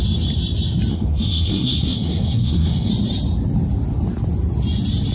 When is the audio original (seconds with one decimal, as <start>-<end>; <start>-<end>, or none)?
0.0-0.9; 2.9-5.1